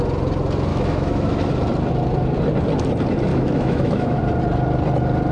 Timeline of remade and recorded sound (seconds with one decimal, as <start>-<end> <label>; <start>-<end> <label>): 0.0-0.7 recorded; 0.7-1.5 remade; 1.5-3.3 recorded; 3.3-4.2 remade; 4.2-5.3 recorded